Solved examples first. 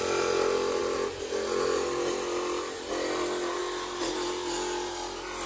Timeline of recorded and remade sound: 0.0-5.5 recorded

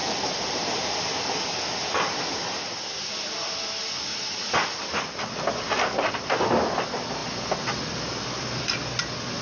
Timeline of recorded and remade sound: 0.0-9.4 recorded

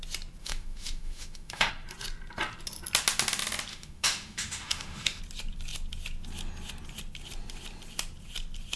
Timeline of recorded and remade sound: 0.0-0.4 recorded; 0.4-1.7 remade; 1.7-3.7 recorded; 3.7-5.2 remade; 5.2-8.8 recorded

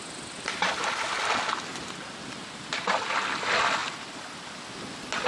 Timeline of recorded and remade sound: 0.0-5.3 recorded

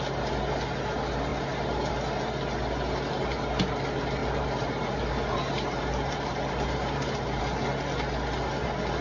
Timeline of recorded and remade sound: 0.0-1.3 recorded; 1.3-1.9 remade; 1.9-4.2 recorded; 4.2-7.4 remade; 7.4-9.0 recorded